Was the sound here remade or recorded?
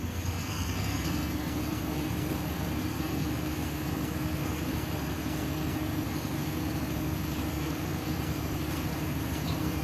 remade